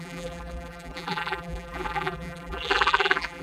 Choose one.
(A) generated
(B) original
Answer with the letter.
A